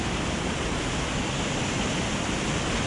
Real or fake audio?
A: real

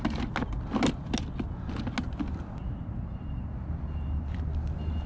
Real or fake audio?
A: real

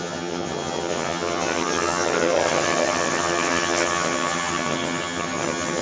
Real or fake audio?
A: fake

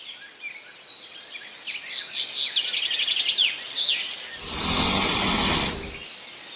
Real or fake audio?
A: real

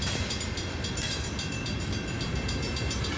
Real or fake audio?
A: fake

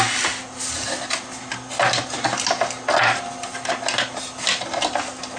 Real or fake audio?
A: real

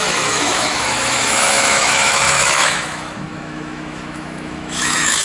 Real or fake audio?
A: fake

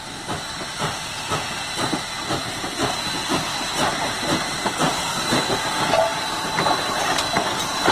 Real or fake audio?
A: fake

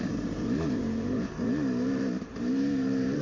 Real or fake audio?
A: fake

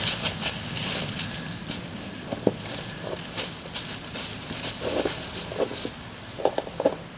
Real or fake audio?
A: real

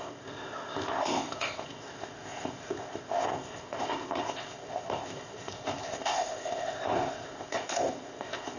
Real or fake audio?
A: fake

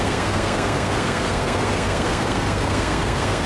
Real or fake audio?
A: fake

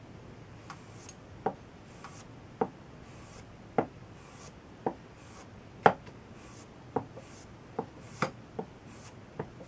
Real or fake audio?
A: real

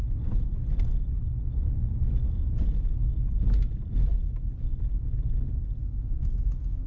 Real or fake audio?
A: real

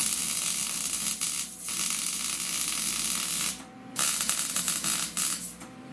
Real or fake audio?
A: fake